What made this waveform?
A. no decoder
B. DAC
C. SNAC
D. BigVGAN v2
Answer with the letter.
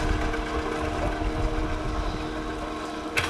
A